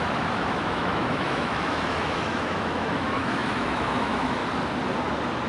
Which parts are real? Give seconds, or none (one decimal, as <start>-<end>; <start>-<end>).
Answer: 4.4-5.5